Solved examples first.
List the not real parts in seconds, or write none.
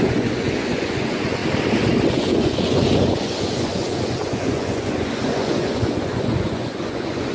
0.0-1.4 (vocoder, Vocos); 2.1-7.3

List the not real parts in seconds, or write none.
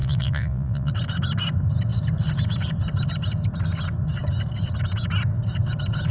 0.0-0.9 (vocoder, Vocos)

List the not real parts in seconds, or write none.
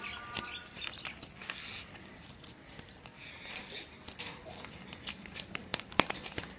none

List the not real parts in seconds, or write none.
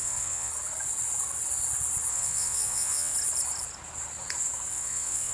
0.0-0.5 (vocoder, WaveNeXt); 2.1-3.1; 4.7-5.3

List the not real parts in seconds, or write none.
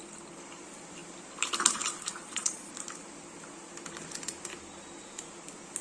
2.1-2.7 (vocoder, Vocos)